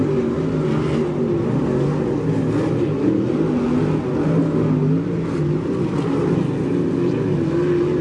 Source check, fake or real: real